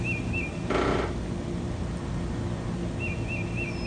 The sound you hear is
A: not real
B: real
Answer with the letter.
B